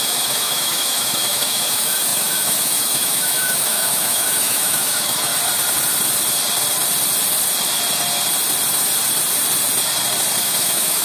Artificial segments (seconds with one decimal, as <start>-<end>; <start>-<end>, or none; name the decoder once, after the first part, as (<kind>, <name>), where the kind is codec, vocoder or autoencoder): 0.0-5.3 (autoencoder, DAC-VAE); 10.4-11.0